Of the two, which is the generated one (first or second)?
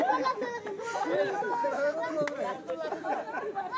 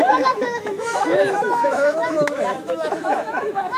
second